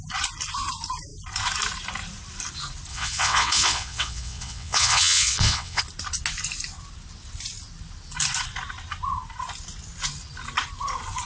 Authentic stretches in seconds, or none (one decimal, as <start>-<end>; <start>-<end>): 0.0-2.9; 5.8-11.3